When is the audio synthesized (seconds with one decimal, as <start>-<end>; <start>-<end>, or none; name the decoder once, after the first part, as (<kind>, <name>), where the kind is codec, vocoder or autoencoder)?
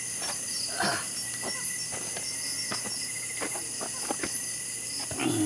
none